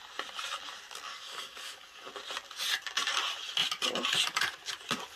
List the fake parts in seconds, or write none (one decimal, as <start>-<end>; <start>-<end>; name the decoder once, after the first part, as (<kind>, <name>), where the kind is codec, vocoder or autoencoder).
1.1-2.1 (codec, DAC)